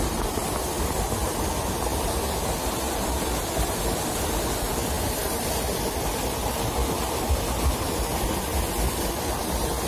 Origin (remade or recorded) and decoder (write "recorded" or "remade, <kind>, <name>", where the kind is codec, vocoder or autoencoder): recorded